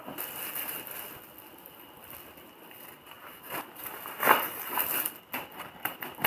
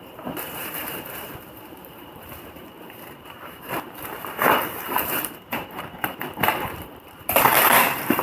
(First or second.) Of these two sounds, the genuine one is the first